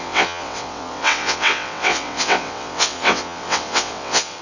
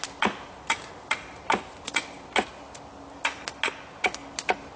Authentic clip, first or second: second